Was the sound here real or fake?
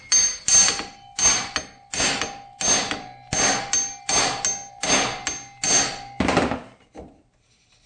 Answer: real